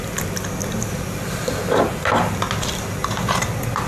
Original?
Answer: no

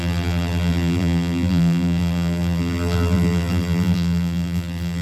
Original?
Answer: no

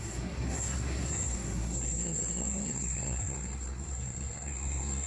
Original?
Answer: no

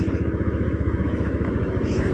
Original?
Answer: no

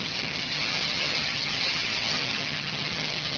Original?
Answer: no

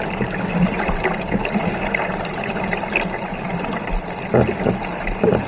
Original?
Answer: yes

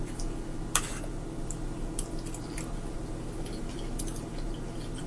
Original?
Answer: yes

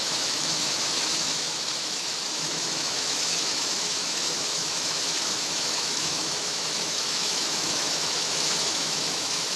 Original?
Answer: no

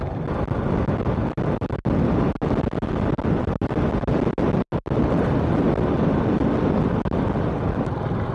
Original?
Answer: yes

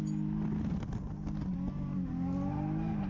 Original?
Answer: yes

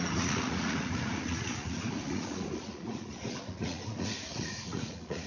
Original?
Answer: no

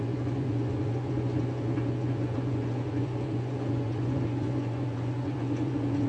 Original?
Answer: no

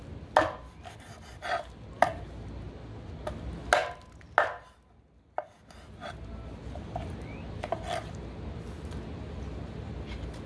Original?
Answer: yes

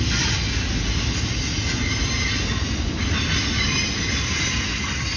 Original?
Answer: yes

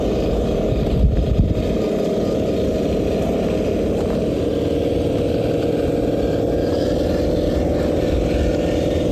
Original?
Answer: yes